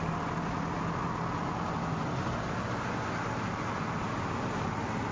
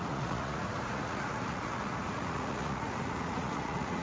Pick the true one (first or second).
first